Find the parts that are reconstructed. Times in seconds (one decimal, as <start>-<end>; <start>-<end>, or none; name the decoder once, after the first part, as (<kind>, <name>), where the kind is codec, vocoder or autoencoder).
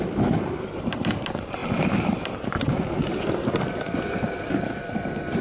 none